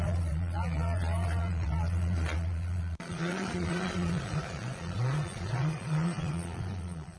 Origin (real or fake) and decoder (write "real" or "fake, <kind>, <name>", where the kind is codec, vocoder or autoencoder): fake, vocoder, Vocos